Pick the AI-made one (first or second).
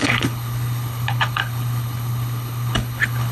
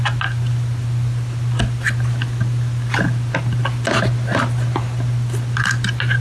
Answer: first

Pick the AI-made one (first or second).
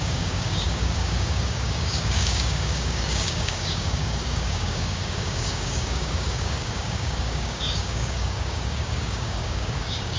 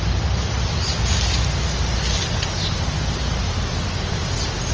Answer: first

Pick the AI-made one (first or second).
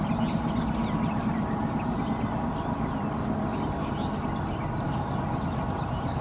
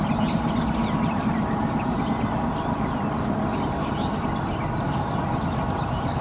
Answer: second